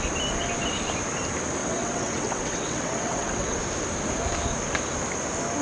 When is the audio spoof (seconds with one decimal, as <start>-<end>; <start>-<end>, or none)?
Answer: 1.6-3.6